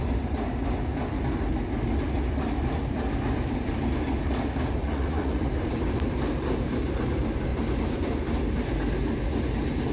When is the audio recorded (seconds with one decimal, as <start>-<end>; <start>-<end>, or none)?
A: 0.0-4.8; 5.5-9.9